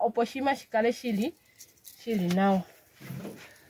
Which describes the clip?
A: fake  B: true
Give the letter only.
B